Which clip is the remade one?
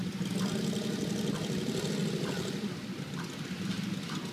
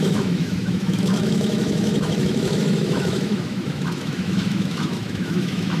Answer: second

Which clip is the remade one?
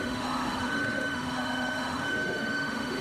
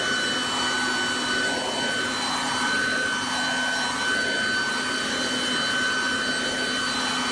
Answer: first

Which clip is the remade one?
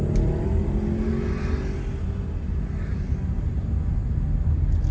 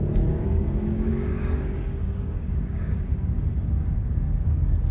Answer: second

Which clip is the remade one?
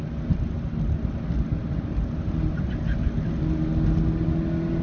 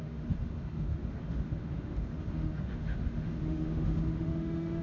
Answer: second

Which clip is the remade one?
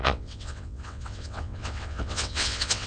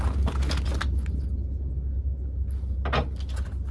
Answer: first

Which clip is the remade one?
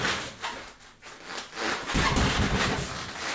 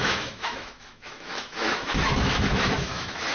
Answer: second